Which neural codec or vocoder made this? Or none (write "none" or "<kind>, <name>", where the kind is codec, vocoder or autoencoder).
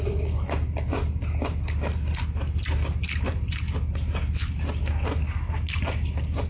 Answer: none